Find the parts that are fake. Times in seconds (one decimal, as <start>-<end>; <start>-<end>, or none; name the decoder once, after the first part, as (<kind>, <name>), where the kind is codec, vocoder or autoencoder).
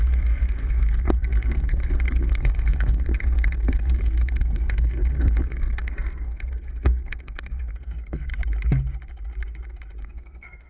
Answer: 0.0-8.3 (codec, SNAC); 10.0-10.7